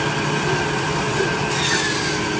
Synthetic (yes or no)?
no